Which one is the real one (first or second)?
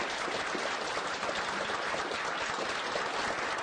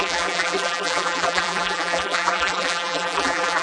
first